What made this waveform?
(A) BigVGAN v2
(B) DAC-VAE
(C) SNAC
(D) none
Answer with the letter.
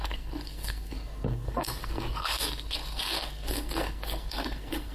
C